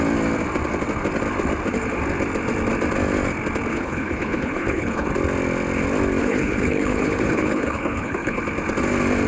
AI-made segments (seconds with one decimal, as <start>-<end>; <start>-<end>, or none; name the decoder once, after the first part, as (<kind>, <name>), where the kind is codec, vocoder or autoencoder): 3.7-5.1 (codec, HILCodec); 6.2-8.4